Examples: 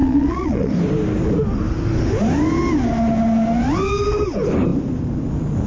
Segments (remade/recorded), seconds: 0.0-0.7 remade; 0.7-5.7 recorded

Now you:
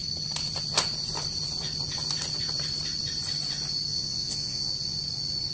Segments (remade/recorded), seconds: 0.0-3.9 recorded; 3.9-4.7 remade; 4.7-5.5 recorded

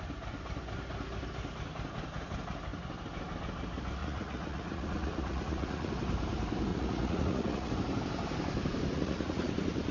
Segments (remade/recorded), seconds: 0.0-4.0 recorded; 4.0-5.9 remade; 5.9-6.7 recorded; 6.7-7.7 remade; 7.7-8.9 recorded; 8.9-9.5 remade; 9.5-9.9 recorded

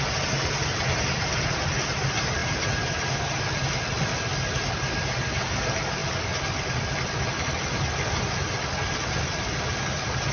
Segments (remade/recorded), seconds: 0.0-10.3 recorded

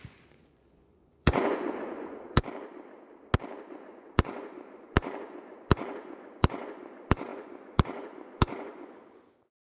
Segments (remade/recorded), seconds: 0.0-2.4 remade; 2.4-3.7 recorded; 3.7-9.8 remade

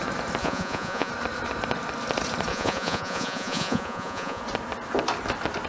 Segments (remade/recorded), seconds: 0.0-0.4 recorded; 0.4-1.1 remade; 1.1-2.5 recorded; 2.5-4.4 remade; 4.4-5.7 recorded

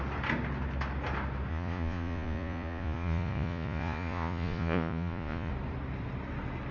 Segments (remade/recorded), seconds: 0.0-1.5 recorded; 1.5-5.5 remade; 5.5-6.7 recorded